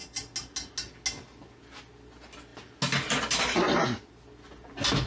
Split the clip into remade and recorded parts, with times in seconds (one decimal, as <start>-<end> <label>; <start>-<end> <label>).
0.0-5.1 recorded